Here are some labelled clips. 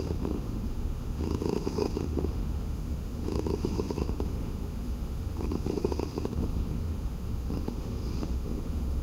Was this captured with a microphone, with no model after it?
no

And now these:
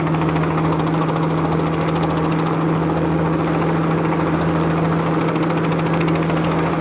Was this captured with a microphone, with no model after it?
yes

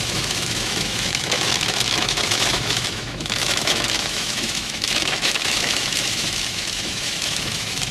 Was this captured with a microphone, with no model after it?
no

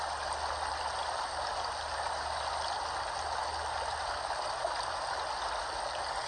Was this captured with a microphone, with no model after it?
yes